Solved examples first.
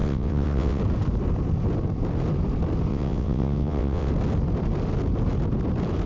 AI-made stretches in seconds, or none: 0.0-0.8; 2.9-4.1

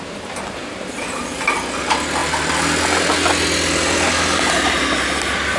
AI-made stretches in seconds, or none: none

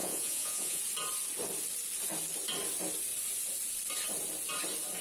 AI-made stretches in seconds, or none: 0.0-0.8

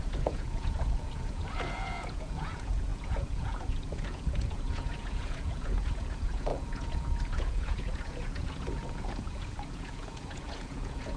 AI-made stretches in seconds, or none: 0.0-11.2

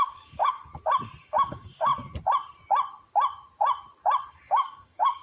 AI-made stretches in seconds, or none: 0.0-0.7; 1.2-1.9; 4.3-5.2